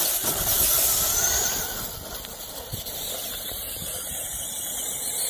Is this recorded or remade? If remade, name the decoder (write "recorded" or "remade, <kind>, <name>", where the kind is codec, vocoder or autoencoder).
recorded